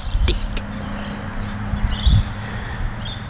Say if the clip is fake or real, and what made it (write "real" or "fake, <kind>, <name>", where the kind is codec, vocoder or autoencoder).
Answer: real